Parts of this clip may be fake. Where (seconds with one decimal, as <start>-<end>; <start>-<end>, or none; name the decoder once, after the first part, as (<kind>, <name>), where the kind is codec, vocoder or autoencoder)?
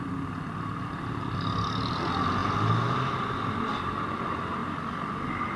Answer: none